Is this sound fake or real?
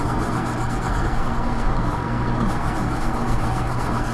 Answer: fake